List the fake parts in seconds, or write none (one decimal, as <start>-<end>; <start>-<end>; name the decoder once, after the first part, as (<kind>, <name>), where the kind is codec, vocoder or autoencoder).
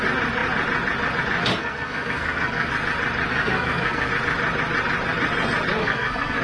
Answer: 1.6-2.7 (codec, SNAC); 3.3-4.1; 5.8-6.4